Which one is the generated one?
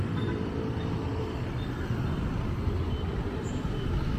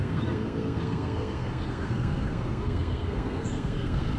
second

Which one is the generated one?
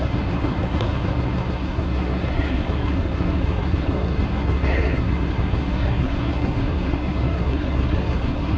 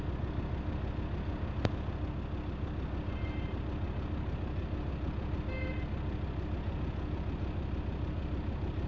first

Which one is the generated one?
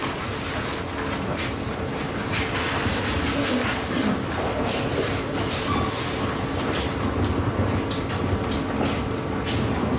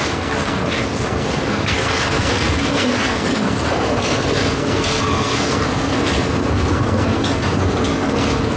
second